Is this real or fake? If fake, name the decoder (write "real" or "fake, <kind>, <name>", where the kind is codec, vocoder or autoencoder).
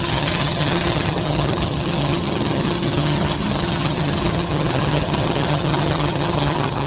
fake, vocoder, HiFi-GAN